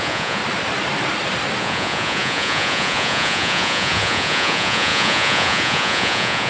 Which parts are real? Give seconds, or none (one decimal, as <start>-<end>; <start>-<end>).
0.4-1.6